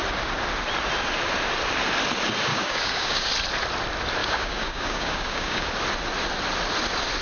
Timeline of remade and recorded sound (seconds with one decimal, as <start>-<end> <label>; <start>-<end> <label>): 0.0-2.5 recorded; 2.5-3.3 remade; 3.3-4.2 recorded; 4.2-5.7 remade; 5.7-7.2 recorded